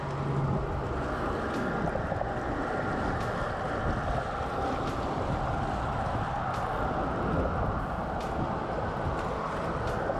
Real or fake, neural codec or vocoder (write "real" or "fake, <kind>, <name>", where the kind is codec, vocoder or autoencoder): real